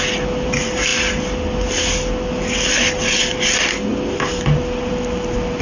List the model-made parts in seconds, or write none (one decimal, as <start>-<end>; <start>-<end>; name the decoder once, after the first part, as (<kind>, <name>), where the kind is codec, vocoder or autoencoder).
none

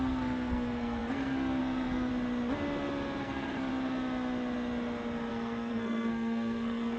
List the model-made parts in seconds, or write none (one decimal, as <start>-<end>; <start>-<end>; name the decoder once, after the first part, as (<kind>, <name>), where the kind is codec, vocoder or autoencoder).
0.0-2.1 (codec, SNAC); 3.2-3.7; 5.3-7.0

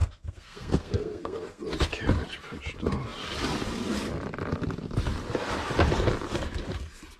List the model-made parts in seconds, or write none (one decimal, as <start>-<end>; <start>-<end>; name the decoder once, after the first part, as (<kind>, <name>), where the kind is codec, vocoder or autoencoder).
0.0-1.6 (codec, SNAC)

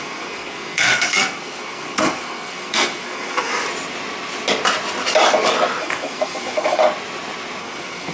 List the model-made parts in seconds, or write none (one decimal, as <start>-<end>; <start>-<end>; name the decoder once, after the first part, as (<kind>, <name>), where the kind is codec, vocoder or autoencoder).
0.0-3.5 (codec, SNAC); 5.8-6.8; 7.6-8.1